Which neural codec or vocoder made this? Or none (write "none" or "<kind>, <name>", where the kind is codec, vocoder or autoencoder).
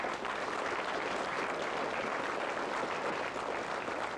none